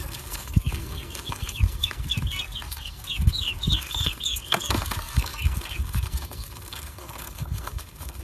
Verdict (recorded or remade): remade